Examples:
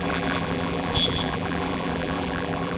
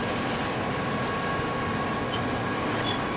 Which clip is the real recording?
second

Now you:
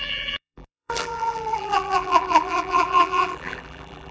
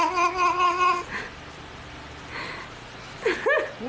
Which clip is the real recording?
second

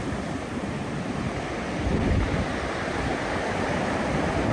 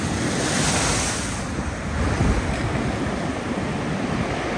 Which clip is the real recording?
second